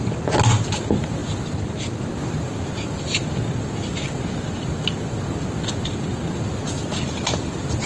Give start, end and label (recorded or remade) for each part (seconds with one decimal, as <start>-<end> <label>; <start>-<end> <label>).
0.0-7.9 recorded